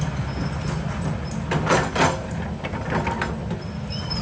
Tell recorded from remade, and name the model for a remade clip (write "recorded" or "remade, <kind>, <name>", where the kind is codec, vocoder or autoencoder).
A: recorded